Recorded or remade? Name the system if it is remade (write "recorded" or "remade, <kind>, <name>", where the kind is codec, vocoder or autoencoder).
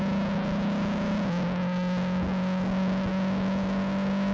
remade, codec, DAC